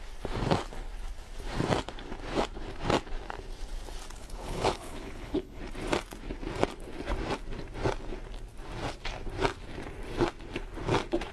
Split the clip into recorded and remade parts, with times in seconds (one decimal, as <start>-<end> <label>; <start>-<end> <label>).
0.0-4.2 recorded; 4.2-5.6 remade; 5.6-11.3 recorded